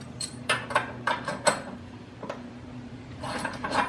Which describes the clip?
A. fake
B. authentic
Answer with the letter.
A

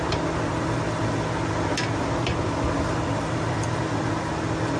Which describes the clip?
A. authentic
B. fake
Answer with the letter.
A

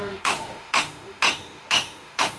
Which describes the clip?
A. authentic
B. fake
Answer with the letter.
B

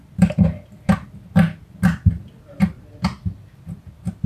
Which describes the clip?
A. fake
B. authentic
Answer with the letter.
B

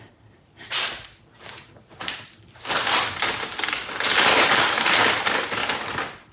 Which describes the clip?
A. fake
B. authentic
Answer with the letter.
B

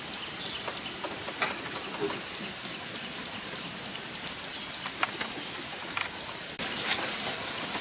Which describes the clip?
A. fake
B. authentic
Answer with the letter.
B